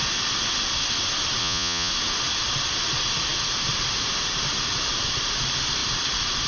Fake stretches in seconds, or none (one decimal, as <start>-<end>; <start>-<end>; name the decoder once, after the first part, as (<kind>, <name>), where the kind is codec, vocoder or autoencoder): 1.4-1.9 (vocoder, Vocos)